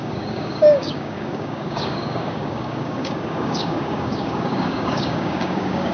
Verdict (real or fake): fake